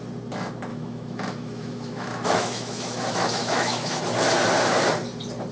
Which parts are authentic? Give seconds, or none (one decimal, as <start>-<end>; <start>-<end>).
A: 0.0-0.7; 4.0-5.5